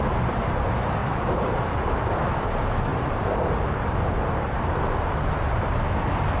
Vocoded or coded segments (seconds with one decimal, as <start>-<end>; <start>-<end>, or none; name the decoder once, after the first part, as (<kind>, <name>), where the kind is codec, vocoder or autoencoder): 1.0-1.6 (vocoder, BigVGAN v2); 2.9-5.1